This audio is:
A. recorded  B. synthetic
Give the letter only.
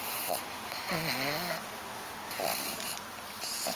A